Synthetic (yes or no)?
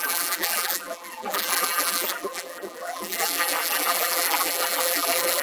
yes